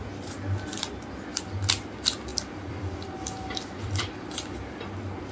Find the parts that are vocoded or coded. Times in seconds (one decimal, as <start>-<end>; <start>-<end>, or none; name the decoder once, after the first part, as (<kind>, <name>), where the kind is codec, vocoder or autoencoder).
2.3-4.7 (vocoder, BigVGAN v2)